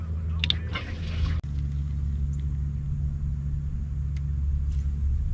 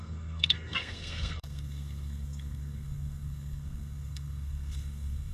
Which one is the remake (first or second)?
second